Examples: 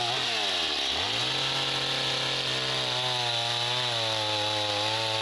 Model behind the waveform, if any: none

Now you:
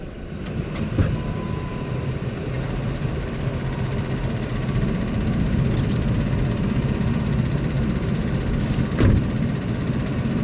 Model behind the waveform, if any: vocoder, BigVGAN v2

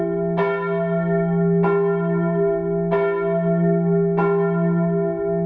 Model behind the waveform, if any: none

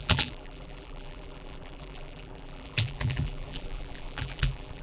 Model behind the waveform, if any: vocoder, BigVGAN v2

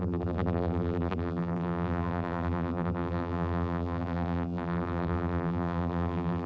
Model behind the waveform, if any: vocoder, BigVGAN v2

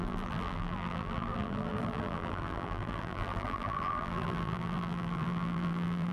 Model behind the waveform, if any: vocoder, BigVGAN v2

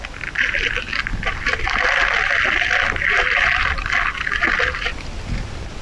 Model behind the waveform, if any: vocoder, BigVGAN v2